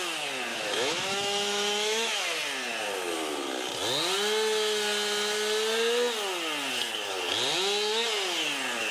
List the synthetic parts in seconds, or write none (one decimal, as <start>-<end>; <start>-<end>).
0.5-2.2